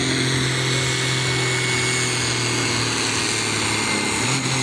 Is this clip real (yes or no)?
yes